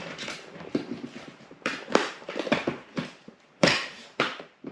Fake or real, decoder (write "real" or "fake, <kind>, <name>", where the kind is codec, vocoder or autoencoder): fake, vocoder, BigVGAN v2